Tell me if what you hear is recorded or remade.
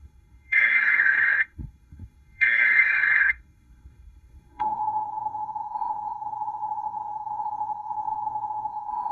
remade